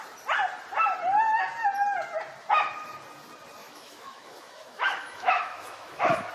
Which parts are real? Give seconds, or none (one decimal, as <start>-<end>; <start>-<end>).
0.0-3.6